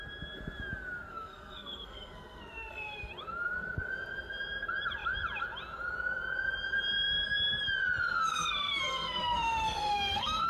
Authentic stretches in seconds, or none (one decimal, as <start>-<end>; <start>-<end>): 0.0-1.1; 3.1-8.1